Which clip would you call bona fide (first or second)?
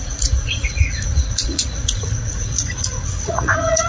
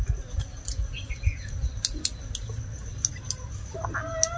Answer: second